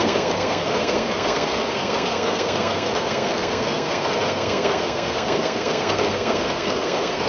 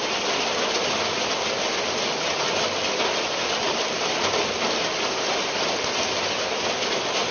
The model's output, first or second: first